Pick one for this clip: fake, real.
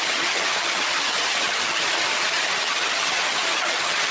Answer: fake